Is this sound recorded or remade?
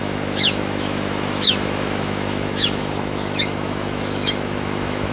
remade